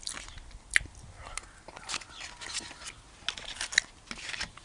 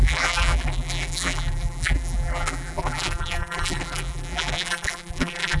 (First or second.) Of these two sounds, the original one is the first